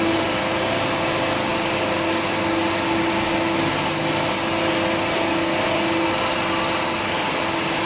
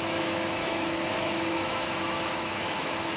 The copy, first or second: second